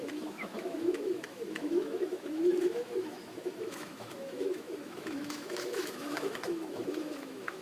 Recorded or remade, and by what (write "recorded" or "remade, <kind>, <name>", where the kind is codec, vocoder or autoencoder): remade, autoencoder, DAC-VAE